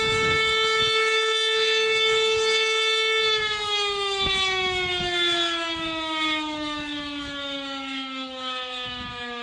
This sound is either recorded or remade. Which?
remade